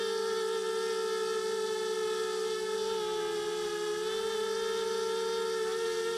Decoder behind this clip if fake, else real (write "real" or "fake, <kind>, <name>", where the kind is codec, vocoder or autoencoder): real